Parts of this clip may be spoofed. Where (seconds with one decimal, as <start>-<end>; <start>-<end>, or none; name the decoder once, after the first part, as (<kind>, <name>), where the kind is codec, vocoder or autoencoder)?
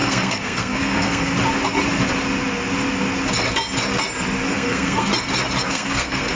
0.0-1.3 (codec, SNAC); 4.5-5.1; 5.7-6.4